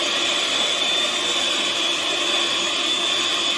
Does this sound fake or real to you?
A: real